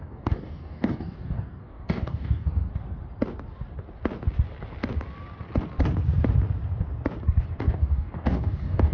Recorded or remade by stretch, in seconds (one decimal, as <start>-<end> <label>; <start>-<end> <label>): 0.0-2.7 remade; 2.7-7.6 recorded; 7.6-8.9 remade